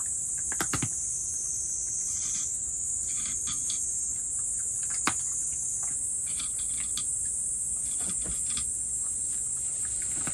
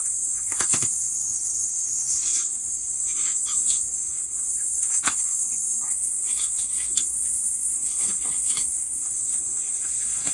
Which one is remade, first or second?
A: second